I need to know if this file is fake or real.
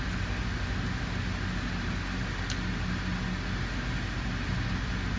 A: real